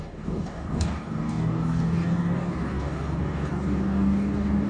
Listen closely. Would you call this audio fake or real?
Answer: fake